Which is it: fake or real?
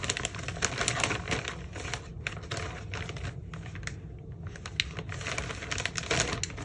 real